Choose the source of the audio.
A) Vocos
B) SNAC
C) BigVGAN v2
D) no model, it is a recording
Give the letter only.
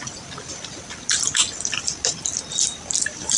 D